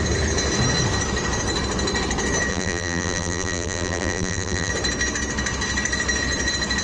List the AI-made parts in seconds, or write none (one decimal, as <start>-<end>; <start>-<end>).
2.5-4.7